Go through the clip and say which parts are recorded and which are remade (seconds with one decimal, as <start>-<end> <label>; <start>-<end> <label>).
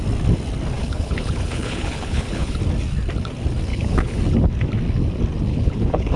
0.0-0.8 recorded; 0.8-2.6 remade; 2.6-3.7 recorded; 3.7-4.2 remade; 4.2-5.5 recorded; 5.5-6.2 remade